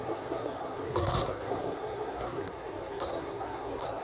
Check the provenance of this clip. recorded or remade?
remade